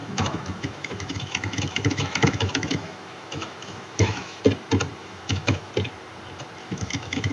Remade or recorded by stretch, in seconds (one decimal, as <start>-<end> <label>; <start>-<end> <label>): 0.0-4.4 remade; 4.4-5.0 recorded; 5.0-5.7 remade; 5.7-6.6 recorded; 6.6-7.3 remade